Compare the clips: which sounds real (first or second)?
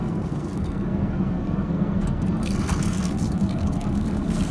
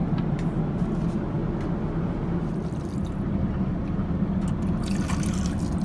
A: second